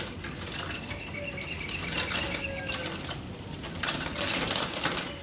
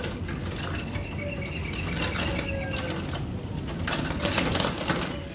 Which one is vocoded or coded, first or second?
first